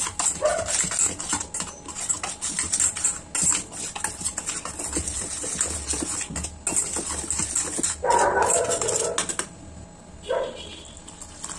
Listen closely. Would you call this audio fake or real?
real